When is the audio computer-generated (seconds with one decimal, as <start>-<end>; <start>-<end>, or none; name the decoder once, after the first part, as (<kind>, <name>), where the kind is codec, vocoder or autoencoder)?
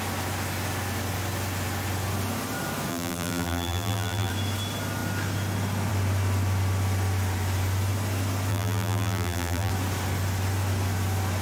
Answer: 2.9-4.3 (vocoder, BigVGAN v2); 8.5-9.7